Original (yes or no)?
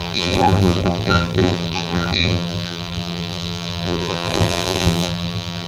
no